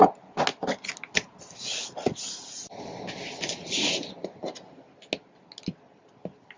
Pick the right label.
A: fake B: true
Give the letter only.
B